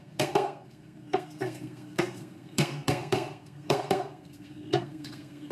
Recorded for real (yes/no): no